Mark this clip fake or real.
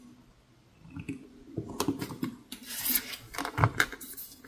real